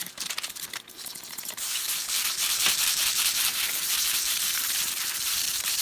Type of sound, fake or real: fake